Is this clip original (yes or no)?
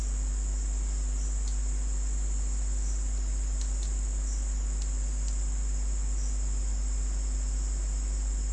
yes